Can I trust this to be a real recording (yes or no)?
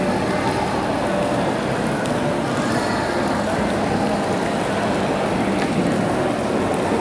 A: yes